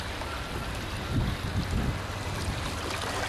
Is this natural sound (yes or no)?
yes